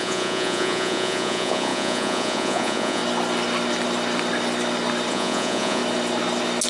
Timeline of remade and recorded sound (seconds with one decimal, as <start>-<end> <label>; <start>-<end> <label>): 0.0-3.0 remade; 3.0-5.1 recorded; 5.1-5.8 remade; 5.8-6.7 recorded